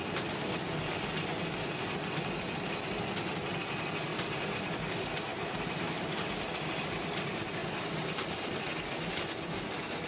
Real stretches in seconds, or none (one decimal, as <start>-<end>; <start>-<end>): 0.0-4.1; 4.6-5.3; 6.4-10.1